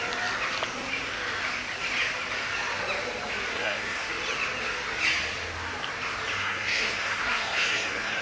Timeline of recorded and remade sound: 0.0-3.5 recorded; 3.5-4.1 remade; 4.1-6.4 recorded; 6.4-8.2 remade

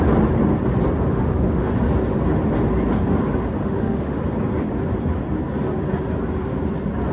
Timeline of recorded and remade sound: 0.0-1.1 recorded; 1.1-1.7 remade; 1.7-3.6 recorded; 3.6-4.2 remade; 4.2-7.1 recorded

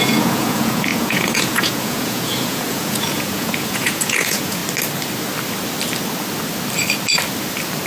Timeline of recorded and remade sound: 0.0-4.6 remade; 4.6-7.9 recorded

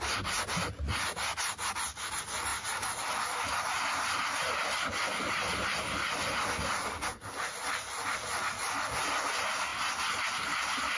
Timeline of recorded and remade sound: 0.0-11.0 recorded

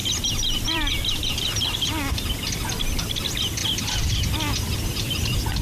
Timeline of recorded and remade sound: 0.0-2.6 remade; 2.6-3.6 recorded; 3.6-5.6 remade

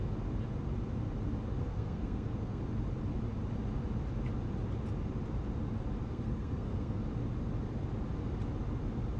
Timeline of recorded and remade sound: 0.0-1.6 recorded; 1.6-2.6 remade; 2.6-6.0 recorded; 6.0-7.0 remade; 7.0-9.2 recorded

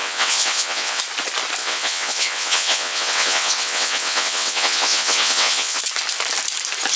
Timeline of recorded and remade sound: 0.0-1.0 remade; 1.0-1.6 recorded; 1.6-5.8 remade; 5.8-7.0 recorded

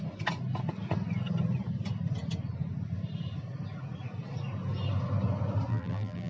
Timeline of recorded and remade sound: 0.0-5.7 recorded; 5.7-6.3 remade